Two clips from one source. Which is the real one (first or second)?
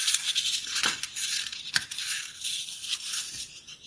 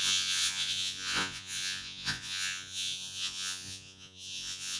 first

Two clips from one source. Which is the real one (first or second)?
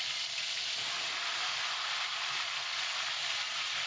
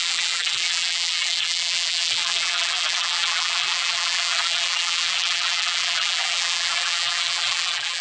first